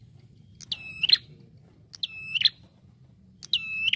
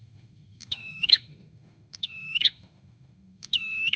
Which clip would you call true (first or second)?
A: first